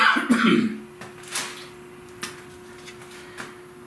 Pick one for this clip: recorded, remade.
recorded